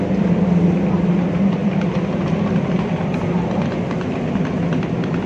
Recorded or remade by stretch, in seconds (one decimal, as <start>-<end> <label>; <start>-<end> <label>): 0.0-5.3 recorded